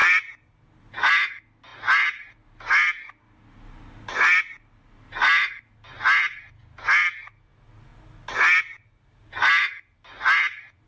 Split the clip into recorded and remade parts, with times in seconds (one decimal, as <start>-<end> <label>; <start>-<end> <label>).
0.0-10.9 recorded